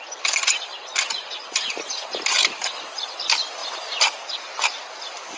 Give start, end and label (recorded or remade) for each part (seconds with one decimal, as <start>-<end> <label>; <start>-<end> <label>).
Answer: 0.0-5.4 recorded